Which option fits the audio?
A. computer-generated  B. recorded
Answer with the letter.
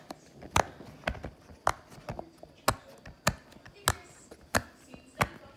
B